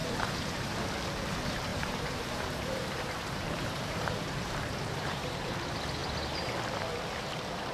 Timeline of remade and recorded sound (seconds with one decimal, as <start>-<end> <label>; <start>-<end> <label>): 0.0-0.8 remade; 0.8-1.7 recorded; 1.7-5.5 remade; 5.5-7.7 recorded